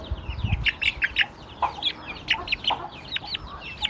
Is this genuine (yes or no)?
yes